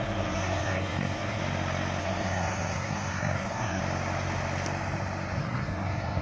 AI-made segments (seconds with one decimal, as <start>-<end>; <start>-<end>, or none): 0.0-1.4; 2.0-3.8; 5.4-6.2